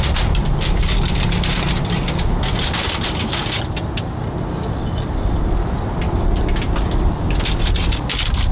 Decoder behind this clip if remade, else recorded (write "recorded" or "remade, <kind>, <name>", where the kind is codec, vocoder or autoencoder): recorded